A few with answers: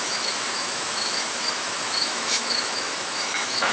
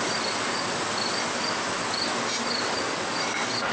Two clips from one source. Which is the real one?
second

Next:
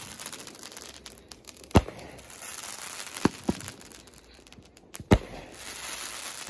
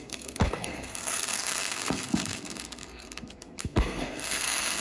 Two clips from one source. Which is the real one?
first